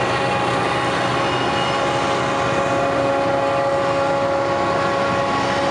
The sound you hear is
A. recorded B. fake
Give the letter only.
A